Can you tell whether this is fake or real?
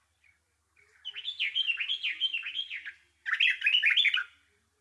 real